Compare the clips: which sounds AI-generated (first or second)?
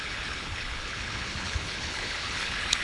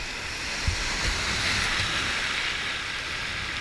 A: first